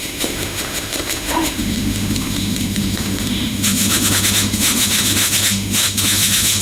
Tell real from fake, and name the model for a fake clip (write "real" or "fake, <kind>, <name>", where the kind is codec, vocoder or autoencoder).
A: fake, autoencoder, DAC-VAE